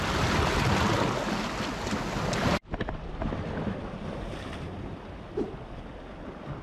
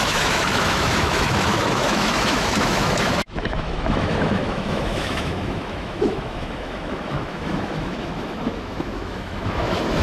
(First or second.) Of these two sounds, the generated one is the second